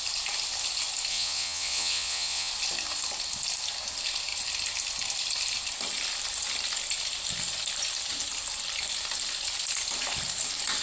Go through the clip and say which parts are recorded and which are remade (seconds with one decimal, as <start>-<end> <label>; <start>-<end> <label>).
0.0-1.1 recorded; 1.1-2.5 remade; 2.5-10.8 recorded